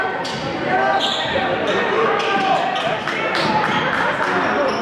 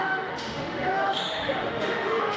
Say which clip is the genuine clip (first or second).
first